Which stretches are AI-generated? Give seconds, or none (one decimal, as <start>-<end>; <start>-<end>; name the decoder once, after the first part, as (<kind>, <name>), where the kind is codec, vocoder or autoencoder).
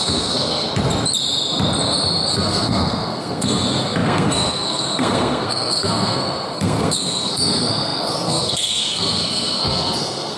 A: 0.0-0.7 (codec, SNAC); 2.3-10.4